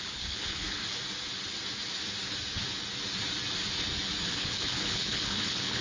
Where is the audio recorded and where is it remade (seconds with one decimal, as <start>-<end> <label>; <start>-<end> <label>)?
0.0-0.8 remade; 0.8-4.3 recorded; 4.3-5.8 remade